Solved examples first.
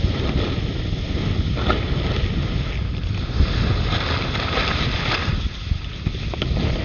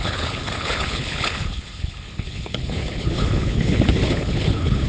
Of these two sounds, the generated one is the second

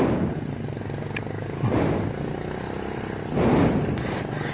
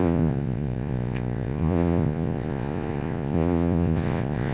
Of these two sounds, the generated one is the second